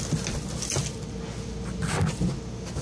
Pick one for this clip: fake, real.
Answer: real